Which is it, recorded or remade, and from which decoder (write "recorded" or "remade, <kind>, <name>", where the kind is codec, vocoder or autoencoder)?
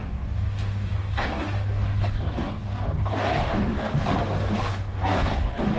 remade, codec, DAC